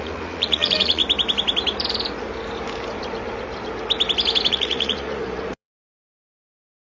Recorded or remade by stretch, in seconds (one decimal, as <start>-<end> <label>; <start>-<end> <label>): 0.0-1.0 remade; 1.0-4.5 recorded; 4.5-7.0 remade